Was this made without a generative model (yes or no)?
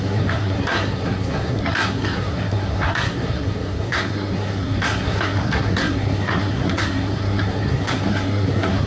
no